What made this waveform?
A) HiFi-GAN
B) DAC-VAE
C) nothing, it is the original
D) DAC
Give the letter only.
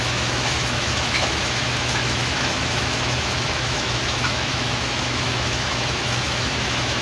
B